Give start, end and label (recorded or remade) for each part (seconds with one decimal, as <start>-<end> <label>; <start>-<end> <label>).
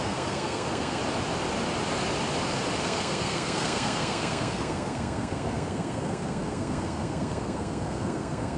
0.0-1.0 remade; 1.0-2.8 recorded; 2.8-8.6 remade